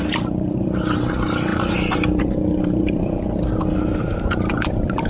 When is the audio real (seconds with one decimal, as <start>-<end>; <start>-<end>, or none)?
1.5-2.6